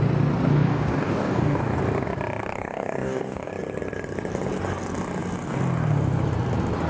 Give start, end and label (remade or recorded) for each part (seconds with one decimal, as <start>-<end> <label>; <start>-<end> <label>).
0.0-0.5 recorded; 0.5-1.8 remade; 1.8-2.4 recorded; 2.4-3.5 remade; 3.5-6.9 recorded